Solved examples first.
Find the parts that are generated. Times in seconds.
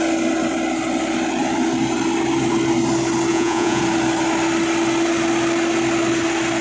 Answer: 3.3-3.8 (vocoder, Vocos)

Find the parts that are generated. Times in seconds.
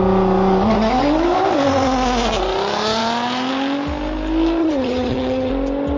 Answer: 4.6-5.5 (vocoder, HiFi-GAN)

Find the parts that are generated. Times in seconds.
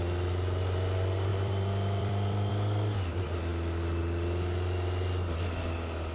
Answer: 1.3-2.5 (vocoder, BigVGAN v2)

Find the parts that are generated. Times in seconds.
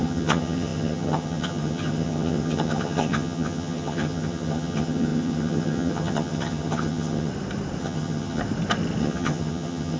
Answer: 0.0-7.3 (vocoder, HiFi-GAN); 7.8-8.4; 9.0-10.0